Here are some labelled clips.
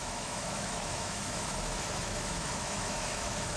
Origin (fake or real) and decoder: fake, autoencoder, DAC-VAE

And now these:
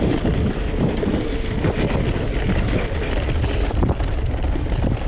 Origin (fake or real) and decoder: real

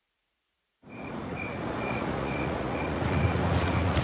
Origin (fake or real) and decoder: fake, vocoder, Vocos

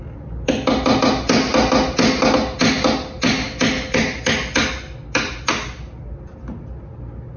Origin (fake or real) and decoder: real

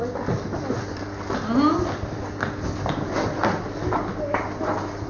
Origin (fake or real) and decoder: real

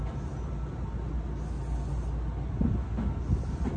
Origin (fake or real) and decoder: real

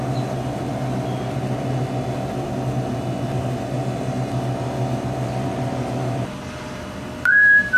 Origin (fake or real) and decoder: real